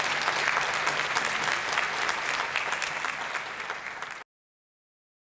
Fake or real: real